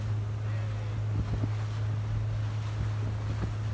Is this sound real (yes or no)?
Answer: yes